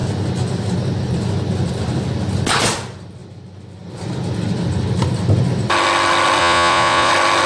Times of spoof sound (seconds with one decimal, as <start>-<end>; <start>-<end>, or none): 6.4-7.1